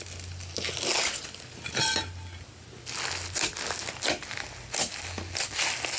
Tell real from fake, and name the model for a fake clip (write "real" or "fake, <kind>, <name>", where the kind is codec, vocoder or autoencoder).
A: real